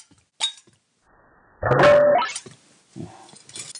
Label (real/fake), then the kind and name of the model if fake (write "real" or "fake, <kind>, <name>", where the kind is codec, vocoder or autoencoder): real